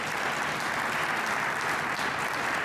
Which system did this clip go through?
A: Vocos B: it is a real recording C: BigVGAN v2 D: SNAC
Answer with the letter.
B